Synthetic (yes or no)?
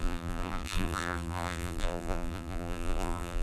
yes